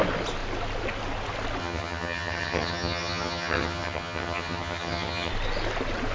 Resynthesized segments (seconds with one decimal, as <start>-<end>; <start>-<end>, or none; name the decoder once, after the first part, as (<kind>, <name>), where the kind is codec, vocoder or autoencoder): 1.6-5.3 (vocoder, HiFi-GAN)